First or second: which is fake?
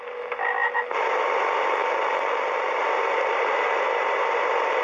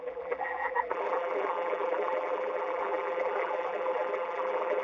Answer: second